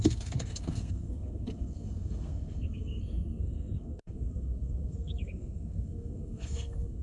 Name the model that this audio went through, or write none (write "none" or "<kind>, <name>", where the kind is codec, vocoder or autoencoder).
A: codec, SNAC